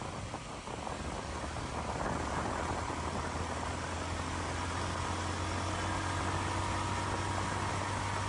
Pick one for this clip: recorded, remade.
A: recorded